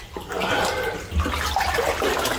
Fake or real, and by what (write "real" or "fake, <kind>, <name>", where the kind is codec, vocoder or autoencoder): real